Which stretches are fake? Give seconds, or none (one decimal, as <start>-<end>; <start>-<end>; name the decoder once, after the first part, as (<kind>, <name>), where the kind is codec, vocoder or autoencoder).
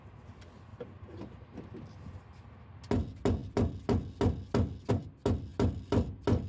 0.7-1.2 (vocoder, BigVGAN v2)